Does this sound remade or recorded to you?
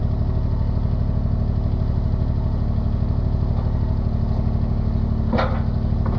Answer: recorded